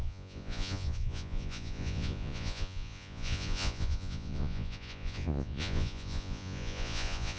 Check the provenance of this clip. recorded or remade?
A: remade